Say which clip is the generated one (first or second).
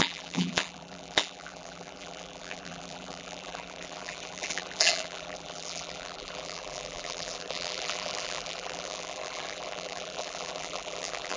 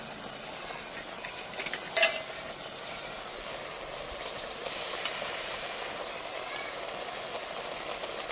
first